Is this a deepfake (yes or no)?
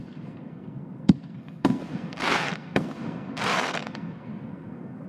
yes